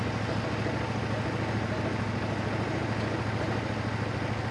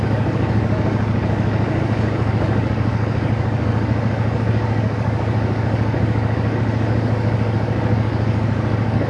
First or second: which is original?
first